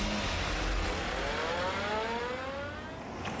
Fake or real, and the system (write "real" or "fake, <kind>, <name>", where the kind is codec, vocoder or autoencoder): real